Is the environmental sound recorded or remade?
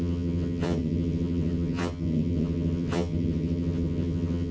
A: remade